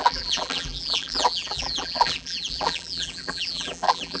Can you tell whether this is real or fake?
fake